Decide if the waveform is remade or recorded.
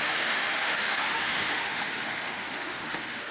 remade